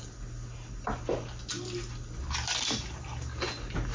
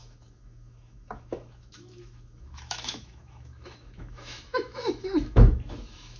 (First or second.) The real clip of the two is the first